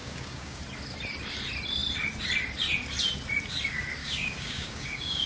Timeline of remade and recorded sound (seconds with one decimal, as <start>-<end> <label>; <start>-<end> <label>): 0.0-0.6 remade; 0.6-4.0 recorded; 4.0-5.3 remade